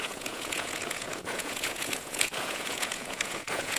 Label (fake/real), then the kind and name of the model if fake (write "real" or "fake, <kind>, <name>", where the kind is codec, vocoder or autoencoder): fake, vocoder, Vocos